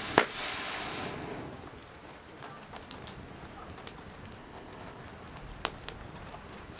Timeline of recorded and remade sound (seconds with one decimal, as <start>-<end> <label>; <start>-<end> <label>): 0.0-4.4 recorded; 4.4-5.0 remade; 5.0-6.8 recorded

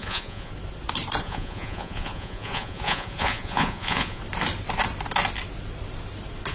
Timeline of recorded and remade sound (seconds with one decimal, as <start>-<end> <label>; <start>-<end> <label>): 0.0-0.5 remade; 0.5-1.2 recorded; 1.2-4.2 remade; 4.2-6.5 recorded

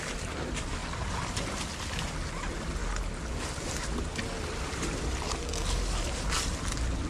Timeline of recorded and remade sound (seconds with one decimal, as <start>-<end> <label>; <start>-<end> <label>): 0.0-7.1 recorded

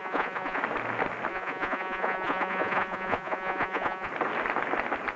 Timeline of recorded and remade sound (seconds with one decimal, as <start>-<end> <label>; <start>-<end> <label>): 0.0-0.6 remade; 0.6-1.3 recorded; 1.3-4.1 remade; 4.1-5.2 recorded

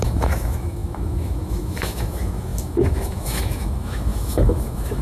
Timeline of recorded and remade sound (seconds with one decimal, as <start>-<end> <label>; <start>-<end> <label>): 0.0-5.0 remade

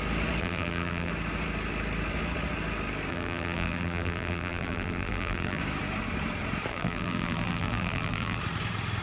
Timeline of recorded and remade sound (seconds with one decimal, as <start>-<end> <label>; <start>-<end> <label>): 0.0-0.4 recorded; 0.4-1.1 remade; 1.1-3.1 recorded; 3.1-5.6 remade; 5.6-6.7 recorded; 6.7-8.4 remade; 8.4-9.0 recorded